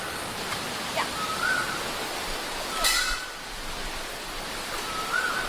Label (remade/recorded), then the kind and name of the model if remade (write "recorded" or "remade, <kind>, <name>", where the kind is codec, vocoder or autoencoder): recorded